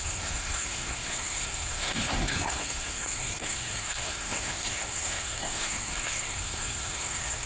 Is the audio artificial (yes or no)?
yes